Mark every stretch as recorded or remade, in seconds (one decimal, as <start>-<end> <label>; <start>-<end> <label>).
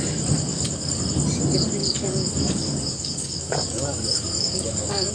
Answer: 0.0-0.5 recorded; 0.5-1.0 remade; 1.0-1.8 recorded; 1.8-5.1 remade